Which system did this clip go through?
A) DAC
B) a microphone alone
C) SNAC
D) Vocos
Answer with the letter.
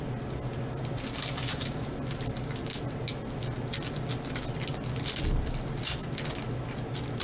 B